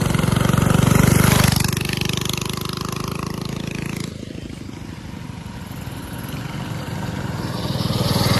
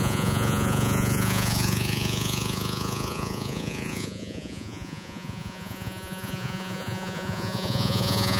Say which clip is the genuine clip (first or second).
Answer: first